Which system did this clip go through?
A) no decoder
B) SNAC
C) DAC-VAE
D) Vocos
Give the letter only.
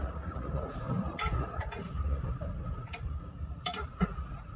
D